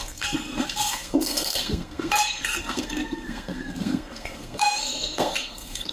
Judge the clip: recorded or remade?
remade